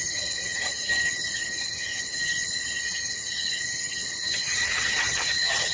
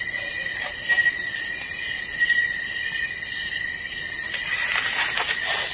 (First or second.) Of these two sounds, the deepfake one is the first